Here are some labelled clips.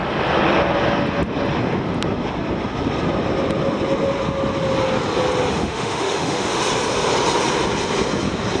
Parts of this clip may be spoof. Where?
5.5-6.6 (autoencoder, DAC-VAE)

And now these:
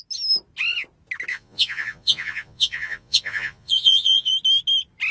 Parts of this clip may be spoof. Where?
1.3-4.3 (vocoder, Vocos)

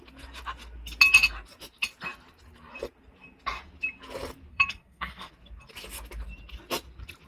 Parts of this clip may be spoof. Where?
4.5-5.3 (codec, SNAC)

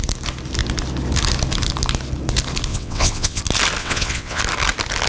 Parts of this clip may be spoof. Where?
2.7-3.4 (vocoder, WaveNeXt); 3.8-4.4

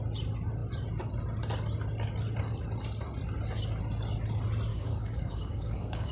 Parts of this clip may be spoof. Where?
4.7-6.1 (codec, DAC)

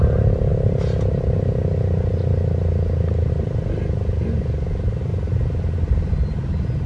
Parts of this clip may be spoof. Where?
none

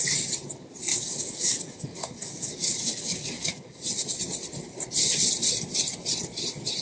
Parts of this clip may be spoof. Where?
0.9-3.8 (codec, DAC)

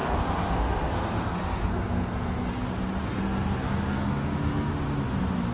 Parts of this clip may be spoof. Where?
0.0-2.5 (codec, SNAC); 3.0-4.7